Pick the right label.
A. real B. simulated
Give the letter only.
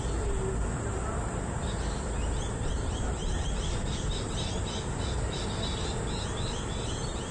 A